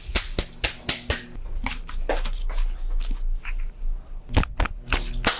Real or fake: real